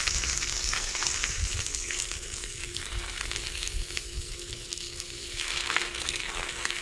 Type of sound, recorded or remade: remade